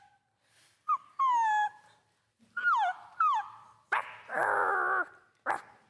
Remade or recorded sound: recorded